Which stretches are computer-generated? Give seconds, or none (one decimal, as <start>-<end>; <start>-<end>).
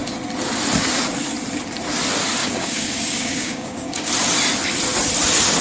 2.4-4.1